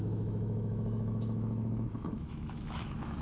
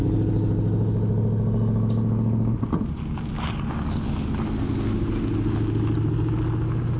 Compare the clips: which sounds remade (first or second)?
first